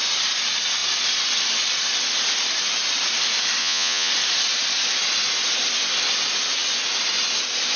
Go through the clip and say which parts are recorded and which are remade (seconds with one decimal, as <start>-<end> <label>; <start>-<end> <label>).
0.0-3.6 recorded; 3.6-4.1 remade; 4.1-7.8 recorded